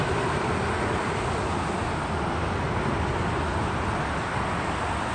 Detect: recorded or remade recorded